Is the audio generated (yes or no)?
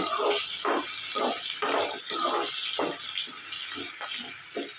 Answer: no